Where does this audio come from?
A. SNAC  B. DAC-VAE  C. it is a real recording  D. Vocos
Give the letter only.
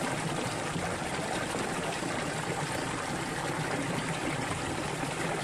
C